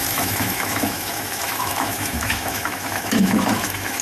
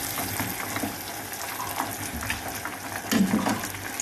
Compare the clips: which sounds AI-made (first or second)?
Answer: first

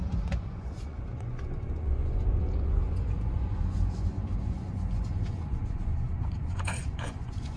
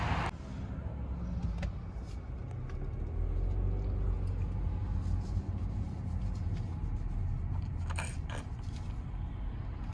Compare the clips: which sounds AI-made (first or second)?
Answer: first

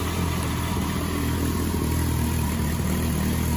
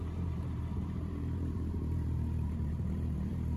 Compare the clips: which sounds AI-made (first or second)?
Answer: second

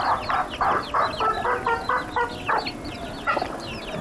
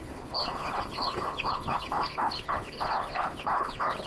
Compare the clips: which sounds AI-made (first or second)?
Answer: second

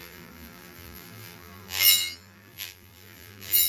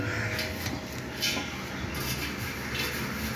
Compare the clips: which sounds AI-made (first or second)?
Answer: first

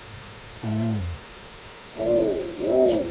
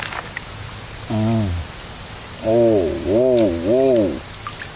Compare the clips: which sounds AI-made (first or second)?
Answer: first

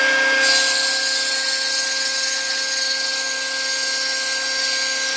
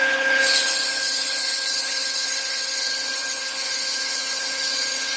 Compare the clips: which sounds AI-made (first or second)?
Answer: second